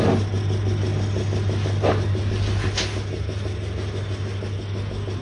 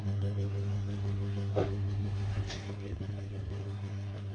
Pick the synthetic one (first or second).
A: second